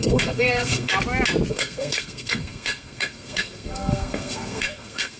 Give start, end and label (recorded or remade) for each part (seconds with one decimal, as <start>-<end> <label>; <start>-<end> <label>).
0.0-0.9 remade; 0.9-1.5 recorded; 1.5-5.2 remade